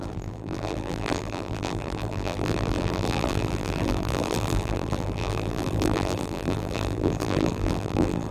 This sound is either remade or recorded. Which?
remade